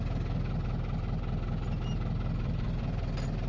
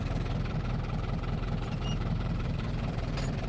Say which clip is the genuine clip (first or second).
first